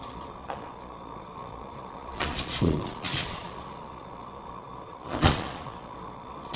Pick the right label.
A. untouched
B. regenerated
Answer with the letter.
B